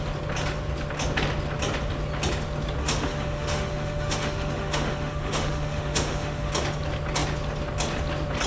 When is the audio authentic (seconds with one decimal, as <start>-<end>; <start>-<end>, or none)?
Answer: 0.0-2.8; 6.5-8.5